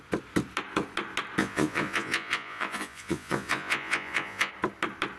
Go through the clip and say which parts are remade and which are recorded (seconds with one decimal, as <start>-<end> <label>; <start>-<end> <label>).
0.0-1.4 recorded; 1.4-4.5 remade; 4.5-5.2 recorded